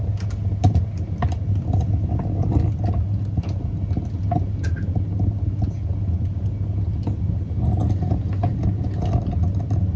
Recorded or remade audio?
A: recorded